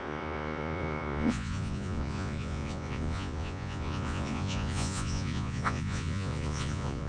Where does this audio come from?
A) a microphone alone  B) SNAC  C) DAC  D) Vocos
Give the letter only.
D